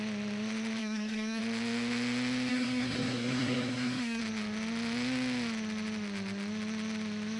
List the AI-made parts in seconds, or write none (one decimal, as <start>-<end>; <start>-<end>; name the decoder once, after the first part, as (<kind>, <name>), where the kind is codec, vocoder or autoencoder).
0.8-1.4 (codec, SNAC); 2.5-4.2